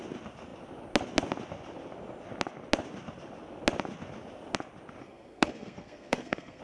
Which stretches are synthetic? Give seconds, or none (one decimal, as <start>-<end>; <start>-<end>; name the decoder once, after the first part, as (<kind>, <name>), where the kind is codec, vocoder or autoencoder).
5.0-6.6 (codec, SNAC)